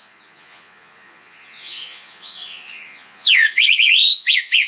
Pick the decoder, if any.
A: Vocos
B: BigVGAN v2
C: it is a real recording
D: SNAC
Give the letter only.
A